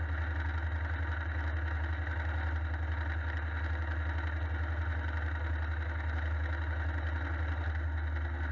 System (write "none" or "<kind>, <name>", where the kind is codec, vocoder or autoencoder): none